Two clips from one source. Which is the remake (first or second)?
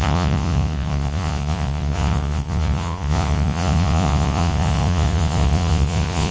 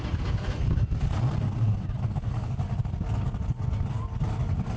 first